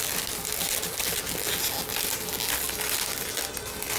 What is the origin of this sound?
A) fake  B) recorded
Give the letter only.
B